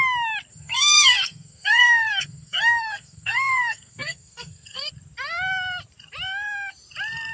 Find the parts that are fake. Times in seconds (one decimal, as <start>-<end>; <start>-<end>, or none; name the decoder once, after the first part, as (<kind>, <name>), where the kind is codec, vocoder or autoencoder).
0.5-4.9 (codec, SNAC)